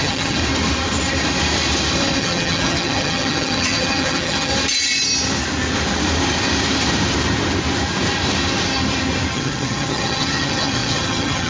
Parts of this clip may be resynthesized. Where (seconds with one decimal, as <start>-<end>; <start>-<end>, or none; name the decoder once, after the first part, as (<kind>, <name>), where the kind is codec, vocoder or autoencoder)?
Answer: 0.0-0.4 (vocoder, HiFi-GAN); 2.2-4.5; 9.3-11.5